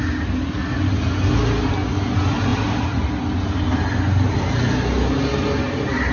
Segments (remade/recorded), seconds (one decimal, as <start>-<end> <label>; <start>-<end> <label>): 0.0-6.1 recorded